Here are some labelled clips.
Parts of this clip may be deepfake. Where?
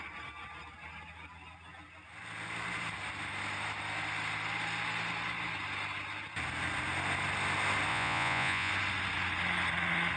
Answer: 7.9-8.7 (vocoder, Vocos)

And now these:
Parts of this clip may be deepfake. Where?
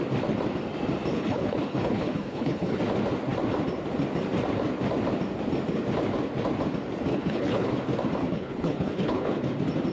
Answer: 1.1-2.8 (codec, HILCodec); 7.1-7.7; 8.2-9.4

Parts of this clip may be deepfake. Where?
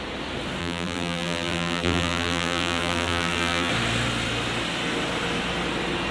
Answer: 0.6-3.7 (vocoder, BigVGAN v2)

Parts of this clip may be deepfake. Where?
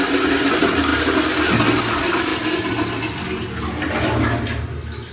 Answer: none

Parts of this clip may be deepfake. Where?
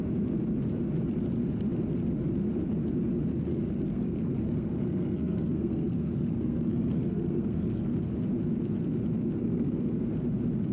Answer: 3.3-8.0 (codec, SNAC); 9.4-9.9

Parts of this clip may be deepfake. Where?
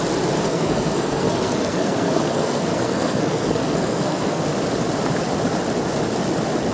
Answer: 0.5-4.4 (codec, SNAC)